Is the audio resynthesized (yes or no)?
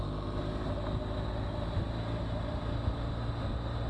no